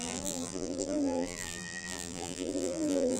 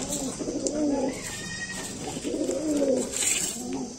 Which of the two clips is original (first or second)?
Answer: second